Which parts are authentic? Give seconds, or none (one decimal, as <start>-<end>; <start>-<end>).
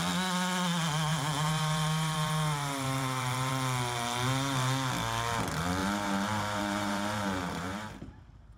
0.0-1.1; 3.5-5.8; 8.1-8.6